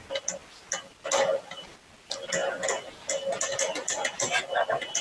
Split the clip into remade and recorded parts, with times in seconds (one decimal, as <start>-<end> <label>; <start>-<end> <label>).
0.0-5.0 recorded